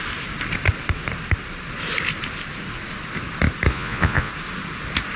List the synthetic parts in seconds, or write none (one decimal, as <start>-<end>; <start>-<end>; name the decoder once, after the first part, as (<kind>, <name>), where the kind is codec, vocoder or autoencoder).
3.7-4.3 (vocoder, Vocos)